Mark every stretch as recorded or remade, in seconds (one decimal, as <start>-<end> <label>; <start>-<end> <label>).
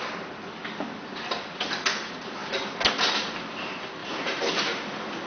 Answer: 0.0-4.0 recorded; 4.0-4.5 remade; 4.5-5.3 recorded